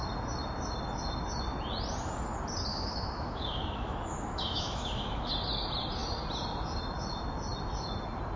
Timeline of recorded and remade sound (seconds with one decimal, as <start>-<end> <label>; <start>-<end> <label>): 0.0-2.7 recorded; 2.7-5.3 remade; 5.3-8.4 recorded